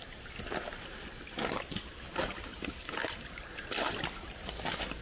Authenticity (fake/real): fake